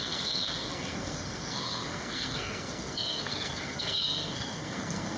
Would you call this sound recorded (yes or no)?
no